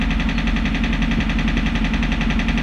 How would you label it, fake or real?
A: real